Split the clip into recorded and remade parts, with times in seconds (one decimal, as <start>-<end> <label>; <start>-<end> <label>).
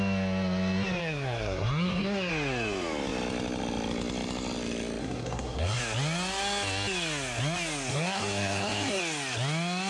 0.0-1.0 recorded; 1.0-2.3 remade; 2.3-5.0 recorded; 5.0-5.8 remade; 5.8-7.9 recorded; 7.9-9.0 remade; 9.0-9.9 recorded